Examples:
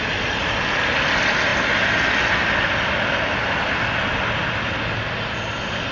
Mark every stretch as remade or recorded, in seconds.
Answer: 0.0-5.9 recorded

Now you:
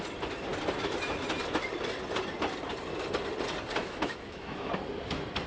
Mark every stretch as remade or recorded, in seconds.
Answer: 0.0-3.8 recorded; 3.8-4.7 remade; 4.7-5.5 recorded

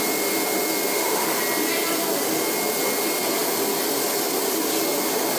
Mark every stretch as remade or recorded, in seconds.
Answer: 0.0-0.9 recorded; 0.9-1.4 remade; 1.4-5.4 recorded

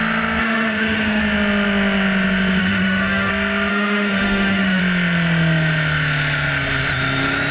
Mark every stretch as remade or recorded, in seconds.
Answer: 0.0-0.4 recorded; 0.4-1.2 remade; 1.2-2.6 recorded; 2.6-3.3 remade; 3.3-3.7 recorded; 3.7-4.8 remade; 4.8-7.5 recorded